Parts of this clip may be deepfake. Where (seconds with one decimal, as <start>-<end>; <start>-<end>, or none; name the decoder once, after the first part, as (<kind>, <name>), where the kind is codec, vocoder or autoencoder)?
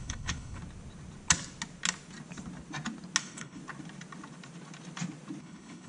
0.0-0.6 (codec, HILCodec); 3.2-3.6; 5.4-5.9